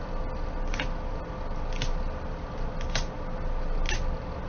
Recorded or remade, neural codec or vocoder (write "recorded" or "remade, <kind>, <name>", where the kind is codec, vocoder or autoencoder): recorded